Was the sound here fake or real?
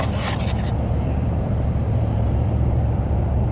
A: fake